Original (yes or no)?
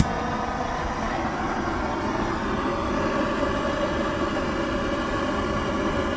yes